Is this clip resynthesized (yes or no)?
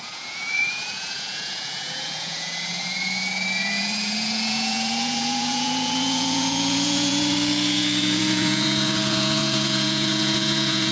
yes